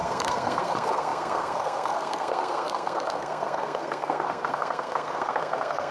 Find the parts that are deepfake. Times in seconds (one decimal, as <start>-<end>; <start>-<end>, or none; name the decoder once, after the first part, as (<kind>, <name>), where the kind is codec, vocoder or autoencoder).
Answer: 0.0-5.9 (codec, SNAC)